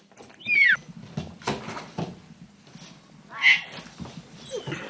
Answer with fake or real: real